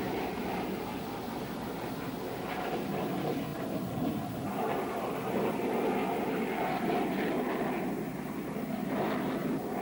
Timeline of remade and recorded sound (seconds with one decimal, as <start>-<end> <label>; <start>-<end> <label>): 0.0-9.8 recorded